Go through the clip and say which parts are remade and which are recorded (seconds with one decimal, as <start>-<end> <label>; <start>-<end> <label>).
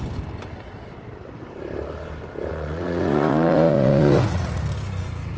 0.0-2.5 recorded; 2.5-4.6 remade; 4.6-5.4 recorded